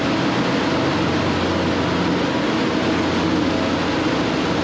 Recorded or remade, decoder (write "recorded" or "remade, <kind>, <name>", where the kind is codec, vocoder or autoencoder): recorded